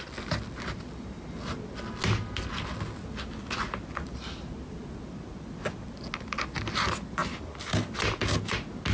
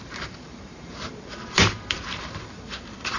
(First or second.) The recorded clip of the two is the first